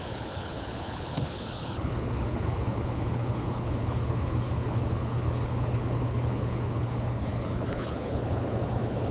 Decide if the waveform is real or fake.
fake